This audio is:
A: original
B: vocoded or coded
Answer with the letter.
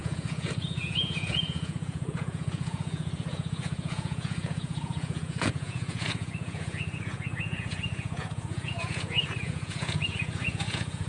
B